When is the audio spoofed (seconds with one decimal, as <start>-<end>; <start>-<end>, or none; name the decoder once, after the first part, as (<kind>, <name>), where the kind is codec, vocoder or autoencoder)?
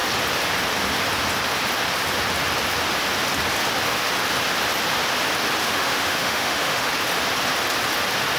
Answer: 5.6-6.9 (autoencoder, DAC-VAE)